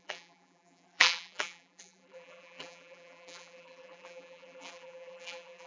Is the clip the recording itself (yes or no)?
no